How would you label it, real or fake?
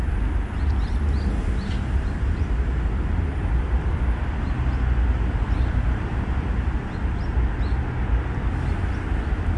real